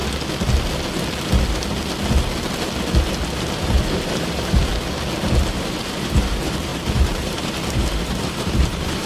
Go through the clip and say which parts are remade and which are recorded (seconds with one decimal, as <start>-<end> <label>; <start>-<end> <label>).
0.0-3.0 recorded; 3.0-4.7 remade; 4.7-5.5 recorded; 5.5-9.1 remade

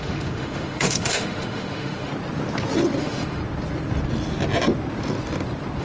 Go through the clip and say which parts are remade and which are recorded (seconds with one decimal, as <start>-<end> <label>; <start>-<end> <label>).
0.0-2.1 remade; 2.1-3.0 recorded; 3.0-3.4 remade; 3.4-5.8 recorded

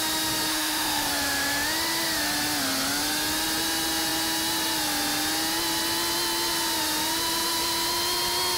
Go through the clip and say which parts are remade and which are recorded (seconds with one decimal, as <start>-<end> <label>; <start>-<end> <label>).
0.0-0.5 recorded; 0.5-1.1 remade; 1.1-8.6 recorded